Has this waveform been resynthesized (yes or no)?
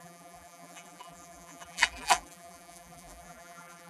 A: yes